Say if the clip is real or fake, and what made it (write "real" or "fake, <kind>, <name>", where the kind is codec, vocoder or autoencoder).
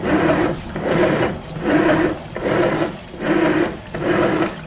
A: fake, vocoder, BigVGAN v2